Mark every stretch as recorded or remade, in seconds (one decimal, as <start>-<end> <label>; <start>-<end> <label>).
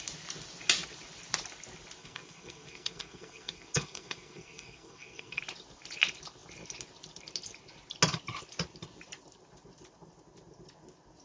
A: 0.0-2.0 recorded; 2.0-5.4 remade; 5.4-11.2 recorded